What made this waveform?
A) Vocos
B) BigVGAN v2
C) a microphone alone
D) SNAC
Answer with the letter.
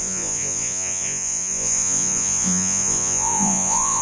A